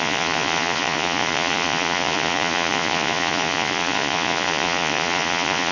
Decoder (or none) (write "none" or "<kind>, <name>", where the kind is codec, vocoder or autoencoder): vocoder, Vocos